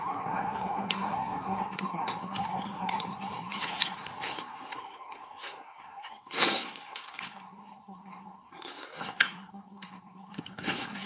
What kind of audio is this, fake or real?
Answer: fake